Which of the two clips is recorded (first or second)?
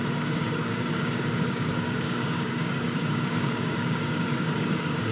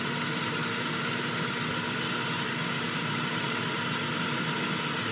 second